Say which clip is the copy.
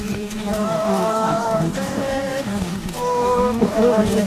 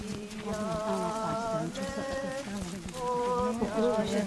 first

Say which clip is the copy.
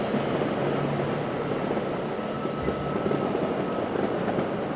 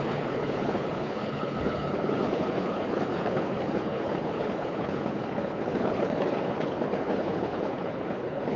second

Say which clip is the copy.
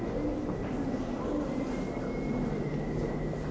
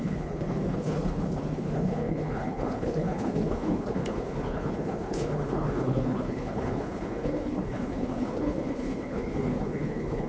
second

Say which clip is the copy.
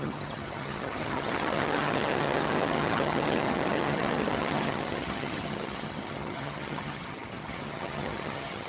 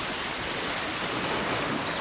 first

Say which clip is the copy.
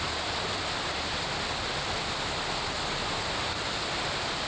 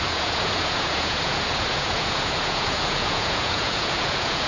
second